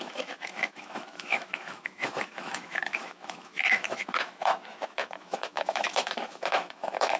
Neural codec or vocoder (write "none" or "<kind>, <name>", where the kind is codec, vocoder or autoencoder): autoencoder, DAC-VAE